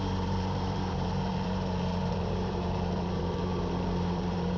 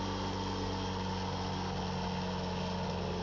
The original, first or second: second